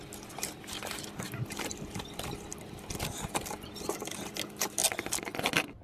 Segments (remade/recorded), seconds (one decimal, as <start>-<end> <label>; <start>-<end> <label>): 0.0-5.8 recorded